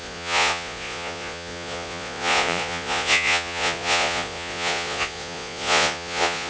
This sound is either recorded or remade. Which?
remade